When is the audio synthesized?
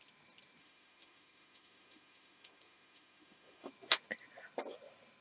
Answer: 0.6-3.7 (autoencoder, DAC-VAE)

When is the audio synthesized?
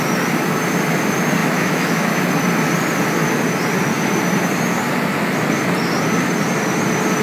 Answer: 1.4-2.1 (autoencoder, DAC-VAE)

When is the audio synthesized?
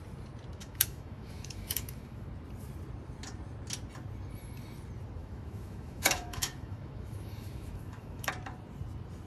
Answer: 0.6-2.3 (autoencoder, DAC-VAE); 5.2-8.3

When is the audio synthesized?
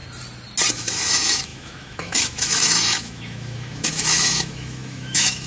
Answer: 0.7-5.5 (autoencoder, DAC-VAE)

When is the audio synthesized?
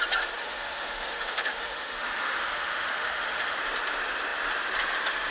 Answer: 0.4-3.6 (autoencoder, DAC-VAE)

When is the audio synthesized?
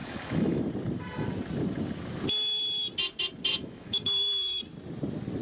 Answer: 0.0-0.6 (autoencoder, DAC-VAE); 3.5-4.6